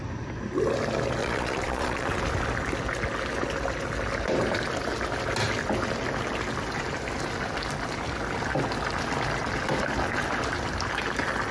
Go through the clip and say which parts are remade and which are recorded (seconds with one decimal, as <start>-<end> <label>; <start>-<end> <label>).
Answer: 0.0-1.2 recorded; 1.2-2.2 remade; 2.2-11.5 recorded